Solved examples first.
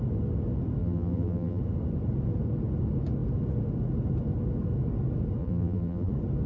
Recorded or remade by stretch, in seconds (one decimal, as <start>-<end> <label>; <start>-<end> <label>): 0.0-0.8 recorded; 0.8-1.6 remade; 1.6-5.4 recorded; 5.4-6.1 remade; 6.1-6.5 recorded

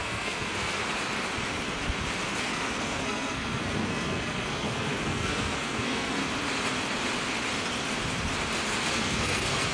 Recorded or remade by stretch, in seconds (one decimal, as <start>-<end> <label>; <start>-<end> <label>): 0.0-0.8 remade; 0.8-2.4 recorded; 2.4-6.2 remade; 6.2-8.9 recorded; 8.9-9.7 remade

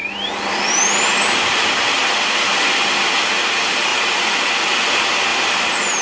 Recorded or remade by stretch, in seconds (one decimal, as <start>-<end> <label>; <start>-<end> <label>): 0.0-3.9 recorded; 3.9-4.5 remade; 4.5-5.3 recorded; 5.3-6.0 remade

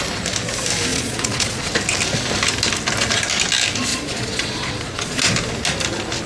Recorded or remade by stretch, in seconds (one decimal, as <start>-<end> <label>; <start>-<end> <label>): 0.0-0.9 recorded; 0.9-1.7 remade; 1.7-3.9 recorded; 3.9-5.2 remade; 5.2-6.3 recorded

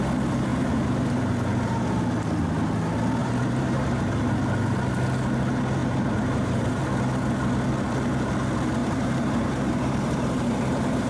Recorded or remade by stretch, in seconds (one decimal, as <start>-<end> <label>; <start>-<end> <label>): 0.0-0.5 recorded; 0.5-2.0 remade; 2.0-3.2 recorded; 3.2-4.3 remade; 4.3-5.8 recorded; 5.8-6.8 remade; 6.8-8.8 recorded; 8.8-11.1 remade

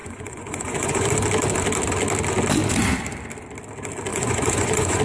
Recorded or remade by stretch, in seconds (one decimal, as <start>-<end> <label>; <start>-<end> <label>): 0.0-1.1 remade; 1.1-4.1 recorded; 4.1-5.0 remade